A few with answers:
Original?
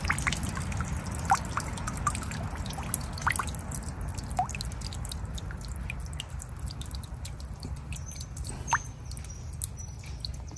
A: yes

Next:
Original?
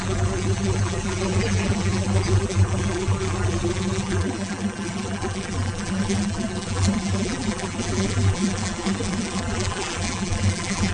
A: no